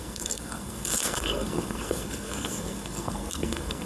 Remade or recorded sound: remade